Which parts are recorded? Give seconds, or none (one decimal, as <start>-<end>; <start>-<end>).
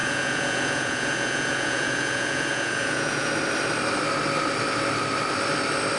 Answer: 3.3-6.0